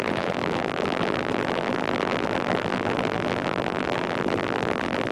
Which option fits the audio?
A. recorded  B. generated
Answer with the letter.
B